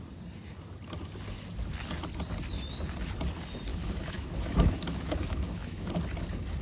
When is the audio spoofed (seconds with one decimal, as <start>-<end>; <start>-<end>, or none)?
3.7-5.9